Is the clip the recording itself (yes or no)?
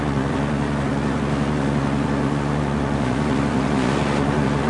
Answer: no